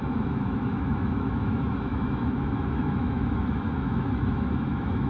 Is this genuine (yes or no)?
no